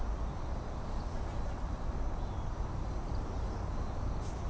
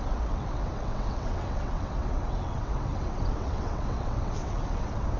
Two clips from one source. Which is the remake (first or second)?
second